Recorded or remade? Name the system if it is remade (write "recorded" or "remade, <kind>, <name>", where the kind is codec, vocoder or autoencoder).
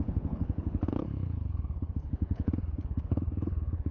remade, codec, HILCodec